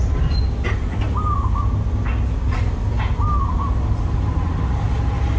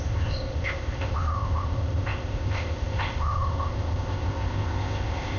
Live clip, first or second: first